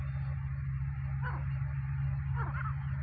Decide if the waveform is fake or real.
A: real